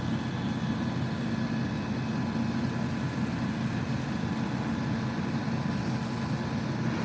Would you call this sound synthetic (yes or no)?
no